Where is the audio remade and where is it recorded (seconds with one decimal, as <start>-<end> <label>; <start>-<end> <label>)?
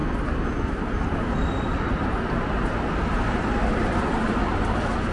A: 0.0-3.1 recorded; 3.1-5.1 remade